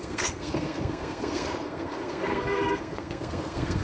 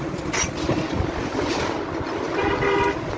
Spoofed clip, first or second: first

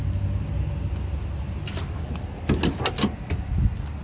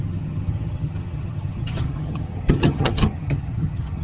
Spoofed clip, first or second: second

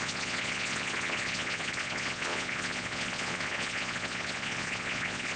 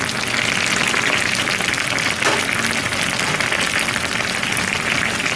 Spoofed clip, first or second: first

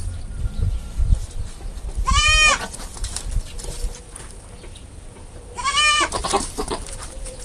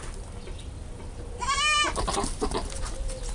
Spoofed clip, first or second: first